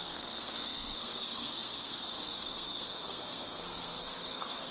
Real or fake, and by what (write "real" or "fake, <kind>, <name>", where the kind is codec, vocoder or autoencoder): fake, codec, SNAC